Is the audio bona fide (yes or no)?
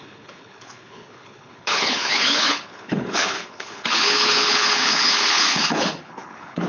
no